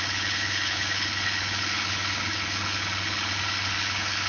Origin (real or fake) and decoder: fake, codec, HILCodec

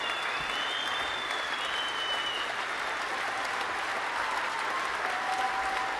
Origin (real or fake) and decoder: real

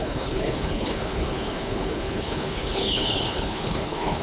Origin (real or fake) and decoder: fake, codec, HILCodec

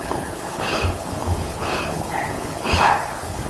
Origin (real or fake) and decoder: fake, codec, HILCodec